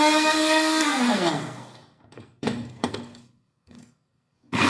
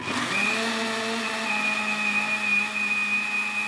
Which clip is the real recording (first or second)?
second